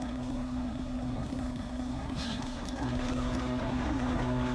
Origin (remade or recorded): remade